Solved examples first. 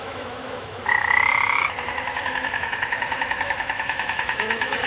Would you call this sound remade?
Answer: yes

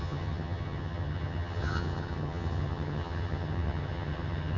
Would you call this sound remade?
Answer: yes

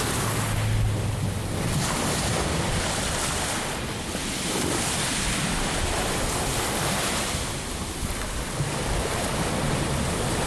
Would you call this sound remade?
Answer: no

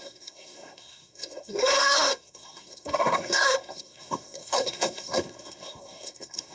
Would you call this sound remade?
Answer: yes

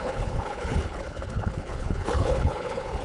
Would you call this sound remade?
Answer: yes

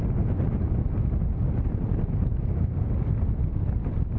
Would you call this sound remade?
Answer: no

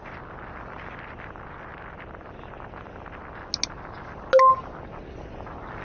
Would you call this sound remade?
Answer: no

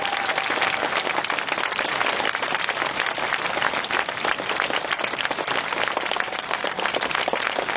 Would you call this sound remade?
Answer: no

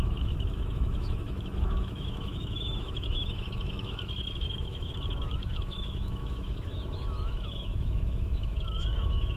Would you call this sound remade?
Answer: yes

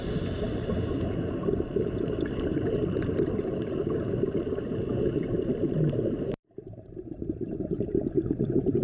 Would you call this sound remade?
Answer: yes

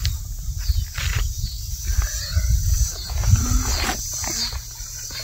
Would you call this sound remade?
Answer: no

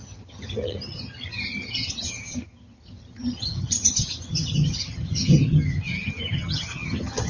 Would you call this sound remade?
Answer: yes